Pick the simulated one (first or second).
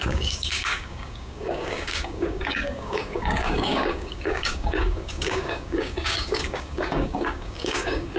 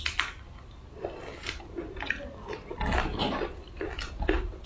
first